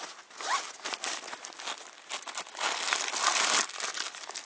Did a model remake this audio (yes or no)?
no